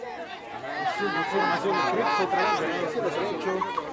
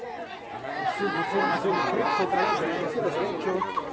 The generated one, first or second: second